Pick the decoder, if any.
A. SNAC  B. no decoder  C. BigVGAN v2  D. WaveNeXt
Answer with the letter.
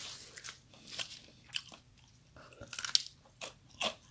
B